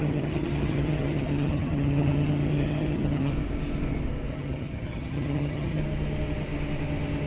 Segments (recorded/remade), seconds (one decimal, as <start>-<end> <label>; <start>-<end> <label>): 0.0-3.3 remade; 3.3-4.3 recorded; 4.3-5.8 remade; 5.8-7.3 recorded